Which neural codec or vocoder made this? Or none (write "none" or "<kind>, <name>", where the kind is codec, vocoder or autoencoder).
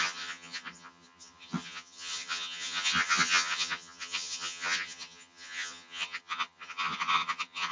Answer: vocoder, HiFi-GAN